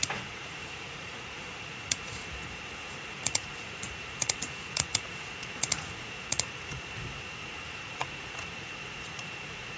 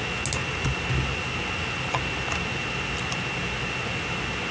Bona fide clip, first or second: second